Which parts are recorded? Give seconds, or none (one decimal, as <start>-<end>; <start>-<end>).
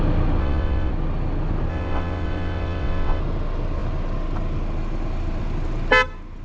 0.0-0.4; 0.9-1.7; 3.2-6.4